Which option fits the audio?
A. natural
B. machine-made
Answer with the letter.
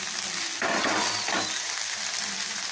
B